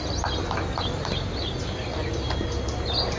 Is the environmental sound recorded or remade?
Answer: recorded